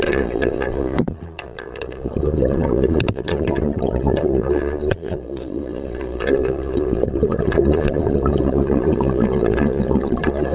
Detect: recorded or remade remade